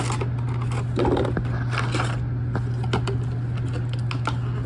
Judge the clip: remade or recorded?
recorded